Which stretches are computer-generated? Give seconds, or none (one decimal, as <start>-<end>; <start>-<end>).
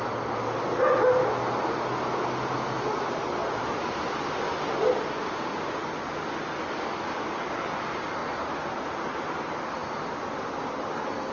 none